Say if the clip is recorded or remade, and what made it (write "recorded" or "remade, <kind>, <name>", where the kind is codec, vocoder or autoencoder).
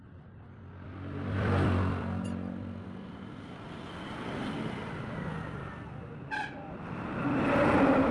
recorded